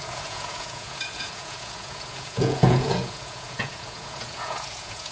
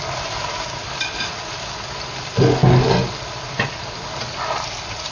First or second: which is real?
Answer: second